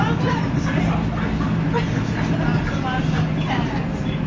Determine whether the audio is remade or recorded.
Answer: recorded